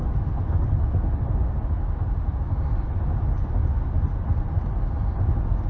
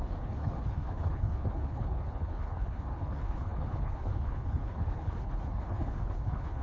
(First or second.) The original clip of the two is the first